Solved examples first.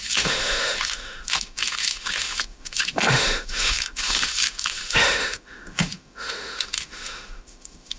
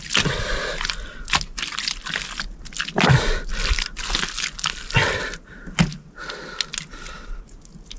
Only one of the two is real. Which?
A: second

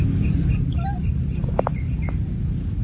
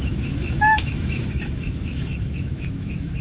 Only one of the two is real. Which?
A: first